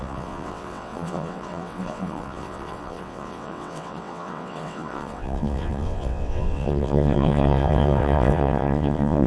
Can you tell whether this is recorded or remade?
remade